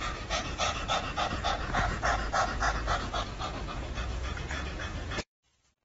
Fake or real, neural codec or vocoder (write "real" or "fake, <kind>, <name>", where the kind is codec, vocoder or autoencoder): fake, vocoder, Vocos